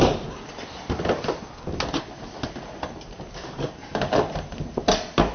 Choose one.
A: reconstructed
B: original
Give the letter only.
B